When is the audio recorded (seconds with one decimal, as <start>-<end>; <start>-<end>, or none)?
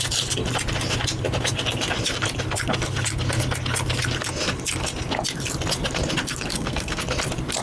0.0-6.5; 7.0-7.6